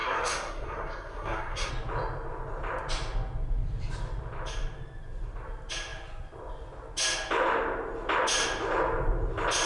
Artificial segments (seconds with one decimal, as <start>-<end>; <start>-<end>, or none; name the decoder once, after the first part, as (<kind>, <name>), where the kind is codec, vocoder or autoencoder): 0.0-1.7 (codec, SNAC)